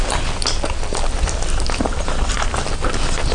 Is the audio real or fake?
real